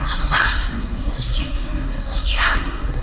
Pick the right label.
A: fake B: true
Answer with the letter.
A